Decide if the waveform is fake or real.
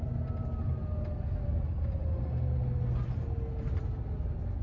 real